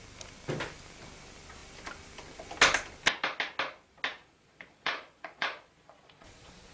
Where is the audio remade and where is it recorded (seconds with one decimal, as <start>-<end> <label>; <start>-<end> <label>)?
0.0-4.2 recorded; 4.2-6.7 remade